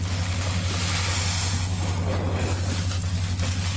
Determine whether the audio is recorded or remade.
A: recorded